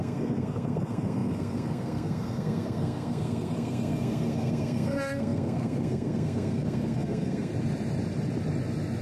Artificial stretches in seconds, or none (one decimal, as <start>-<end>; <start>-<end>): 0.0-7.5